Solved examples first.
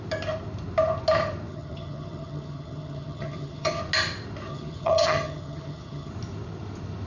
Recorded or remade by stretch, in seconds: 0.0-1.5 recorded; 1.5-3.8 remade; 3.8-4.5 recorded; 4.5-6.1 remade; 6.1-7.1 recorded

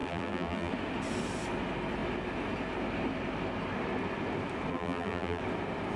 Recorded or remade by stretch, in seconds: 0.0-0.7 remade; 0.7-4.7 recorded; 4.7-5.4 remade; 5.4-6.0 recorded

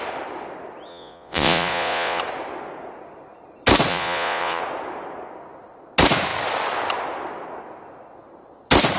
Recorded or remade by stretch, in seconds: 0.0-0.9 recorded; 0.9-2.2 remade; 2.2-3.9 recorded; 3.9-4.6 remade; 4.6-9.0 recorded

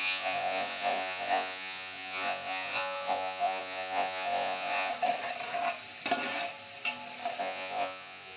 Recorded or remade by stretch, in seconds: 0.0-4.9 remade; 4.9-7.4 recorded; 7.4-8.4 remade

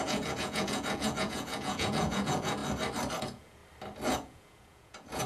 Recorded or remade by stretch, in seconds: 0.0-2.6 remade; 2.6-3.2 recorded; 3.2-3.6 remade; 3.6-4.1 recorded; 4.1-5.3 remade

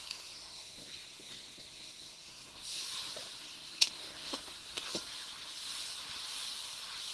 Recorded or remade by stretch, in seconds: 0.0-2.8 remade; 2.8-3.4 recorded; 3.4-4.8 remade; 4.8-7.1 recorded

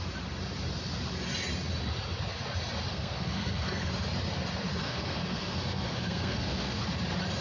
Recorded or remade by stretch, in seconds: 0.0-2.9 recorded; 2.9-3.9 remade; 3.9-4.8 recorded; 4.8-6.8 remade; 6.8-7.4 recorded

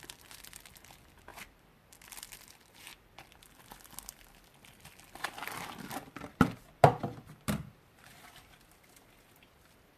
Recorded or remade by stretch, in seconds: 0.0-1.3 recorded; 1.3-2.4 remade; 2.4-2.9 recorded; 2.9-7.8 remade; 7.8-10.0 recorded